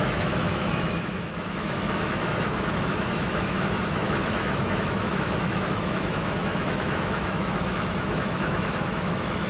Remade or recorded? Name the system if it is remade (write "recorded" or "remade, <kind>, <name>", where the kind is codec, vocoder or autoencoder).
remade, autoencoder, DAC-VAE